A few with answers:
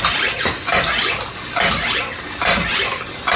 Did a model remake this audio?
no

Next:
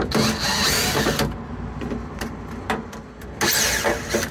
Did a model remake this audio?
no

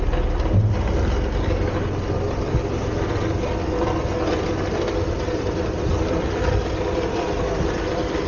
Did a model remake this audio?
no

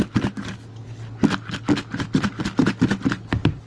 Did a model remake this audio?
no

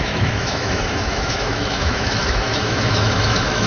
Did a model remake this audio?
yes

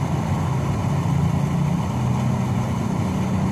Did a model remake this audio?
no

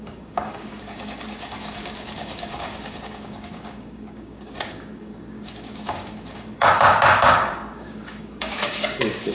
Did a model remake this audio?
yes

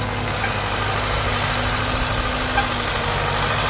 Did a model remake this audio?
no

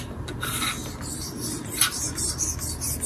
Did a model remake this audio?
no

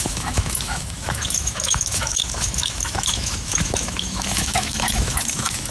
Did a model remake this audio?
yes